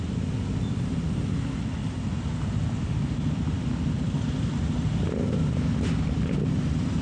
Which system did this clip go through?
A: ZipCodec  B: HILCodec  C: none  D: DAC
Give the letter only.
C